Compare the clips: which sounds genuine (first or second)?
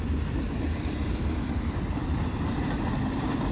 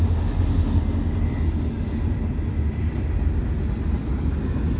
second